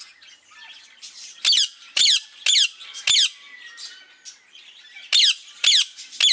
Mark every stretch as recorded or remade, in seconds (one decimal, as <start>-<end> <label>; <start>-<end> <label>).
0.0-6.3 recorded